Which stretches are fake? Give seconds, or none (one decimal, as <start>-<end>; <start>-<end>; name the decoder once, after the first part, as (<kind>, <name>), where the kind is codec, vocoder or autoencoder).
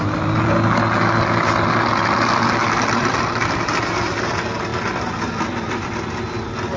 none